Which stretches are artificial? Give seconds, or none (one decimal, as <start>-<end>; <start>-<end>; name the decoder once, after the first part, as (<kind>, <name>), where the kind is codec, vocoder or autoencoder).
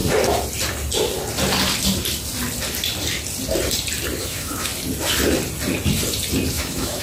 4.2-4.7 (autoencoder, DAC-VAE); 6.5-7.0